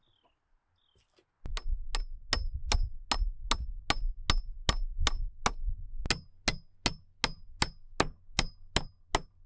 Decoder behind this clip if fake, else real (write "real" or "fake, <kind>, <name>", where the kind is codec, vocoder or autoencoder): real